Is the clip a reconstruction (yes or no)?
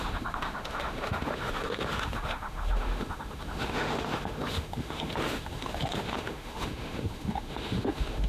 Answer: yes